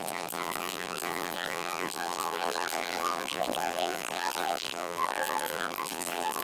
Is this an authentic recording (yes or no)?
no